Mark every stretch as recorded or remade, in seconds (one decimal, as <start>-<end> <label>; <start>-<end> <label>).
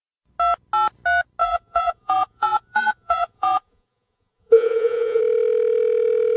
0.0-1.4 recorded; 1.4-5.2 remade; 5.2-6.4 recorded